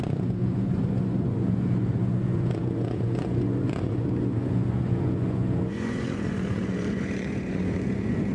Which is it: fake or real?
fake